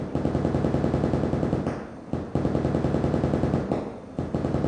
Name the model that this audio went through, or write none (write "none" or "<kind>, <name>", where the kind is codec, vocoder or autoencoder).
none